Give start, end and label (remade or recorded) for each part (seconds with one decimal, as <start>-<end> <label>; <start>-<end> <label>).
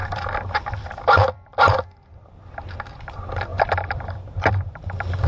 0.0-2.5 remade; 2.5-3.5 recorded; 3.5-4.5 remade; 4.5-5.3 recorded